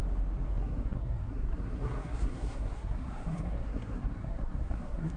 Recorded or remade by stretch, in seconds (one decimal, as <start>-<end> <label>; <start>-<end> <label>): 0.0-0.5 recorded; 0.5-5.2 remade